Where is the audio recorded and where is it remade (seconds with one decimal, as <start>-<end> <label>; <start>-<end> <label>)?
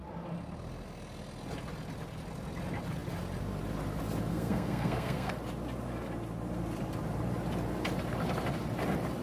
0.0-4.3 recorded; 4.3-5.3 remade; 5.3-9.2 recorded